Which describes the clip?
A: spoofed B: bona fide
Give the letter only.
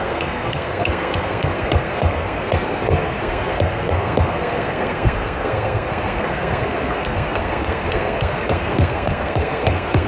A